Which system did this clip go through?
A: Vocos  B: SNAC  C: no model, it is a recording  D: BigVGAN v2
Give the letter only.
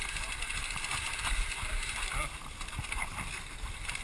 D